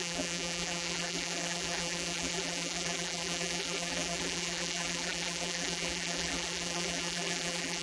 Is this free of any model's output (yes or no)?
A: no